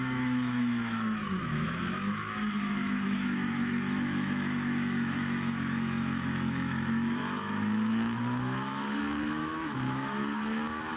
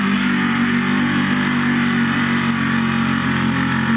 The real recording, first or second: second